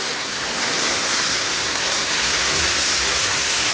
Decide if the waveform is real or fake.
fake